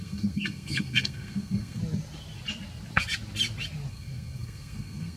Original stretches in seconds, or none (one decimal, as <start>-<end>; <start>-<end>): 1.8-3.9